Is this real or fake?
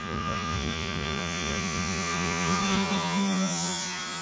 fake